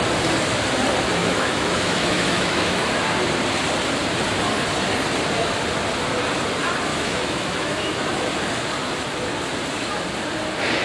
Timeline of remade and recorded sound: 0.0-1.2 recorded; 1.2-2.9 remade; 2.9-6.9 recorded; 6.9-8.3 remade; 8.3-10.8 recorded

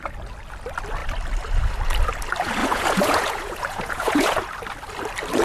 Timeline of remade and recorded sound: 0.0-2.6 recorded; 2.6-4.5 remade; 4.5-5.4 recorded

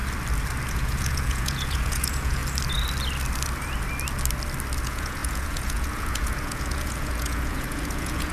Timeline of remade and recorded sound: 0.0-0.7 recorded; 0.7-2.4 remade; 2.4-4.8 recorded; 4.8-8.3 remade

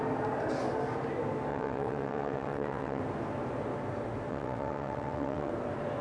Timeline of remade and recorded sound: 0.0-1.5 recorded; 1.5-3.0 remade; 3.0-4.3 recorded; 4.3-5.5 remade; 5.5-6.0 recorded

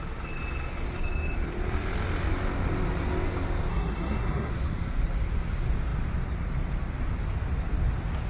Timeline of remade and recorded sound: 0.0-3.7 recorded; 3.7-4.5 remade; 4.5-8.3 recorded

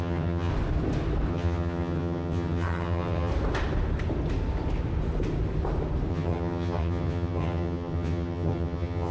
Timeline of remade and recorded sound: 0.0-0.5 remade; 0.5-1.3 recorded; 1.3-3.3 remade; 3.3-6.1 recorded; 6.1-9.1 remade

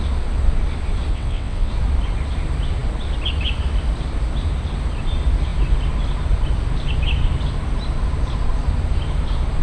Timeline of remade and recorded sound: 0.0-1.1 recorded; 1.1-1.7 remade; 1.7-9.6 recorded

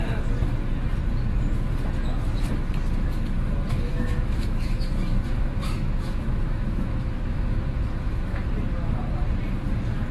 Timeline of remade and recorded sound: 0.0-3.9 recorded; 3.9-8.5 remade; 8.5-10.1 recorded